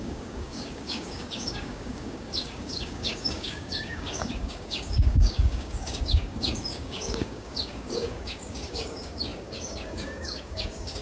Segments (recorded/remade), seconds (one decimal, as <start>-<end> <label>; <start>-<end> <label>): 0.0-11.0 remade